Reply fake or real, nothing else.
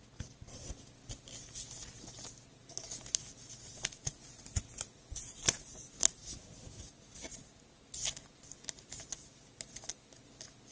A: real